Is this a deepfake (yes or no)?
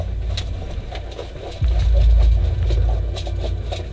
no